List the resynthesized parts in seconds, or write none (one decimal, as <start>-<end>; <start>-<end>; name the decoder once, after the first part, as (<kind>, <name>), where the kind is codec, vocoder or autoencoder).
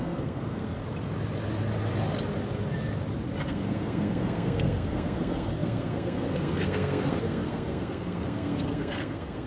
0.0-0.8 (codec, SNAC); 3.4-9.5